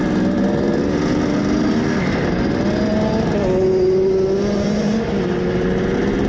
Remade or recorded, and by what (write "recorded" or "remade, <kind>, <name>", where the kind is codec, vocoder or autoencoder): recorded